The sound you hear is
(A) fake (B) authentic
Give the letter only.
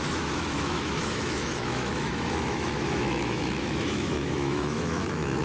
A